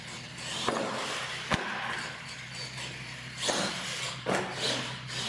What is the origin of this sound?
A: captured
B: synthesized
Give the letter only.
A